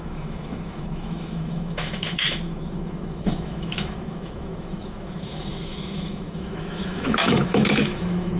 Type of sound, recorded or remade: remade